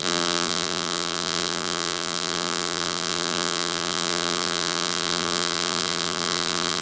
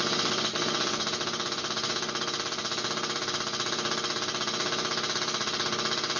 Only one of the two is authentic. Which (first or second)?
second